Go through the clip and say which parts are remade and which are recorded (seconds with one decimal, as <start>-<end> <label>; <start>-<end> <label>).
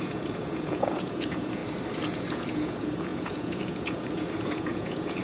0.0-1.6 remade; 1.6-2.1 recorded; 2.1-5.2 remade